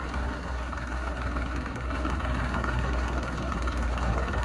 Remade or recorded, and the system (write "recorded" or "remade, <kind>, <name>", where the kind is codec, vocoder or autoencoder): remade, codec, SNAC